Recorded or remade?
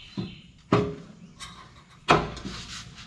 recorded